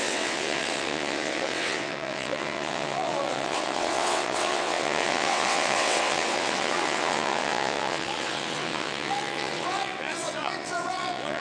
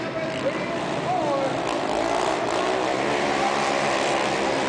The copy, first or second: first